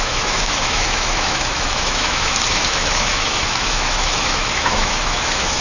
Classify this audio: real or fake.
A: fake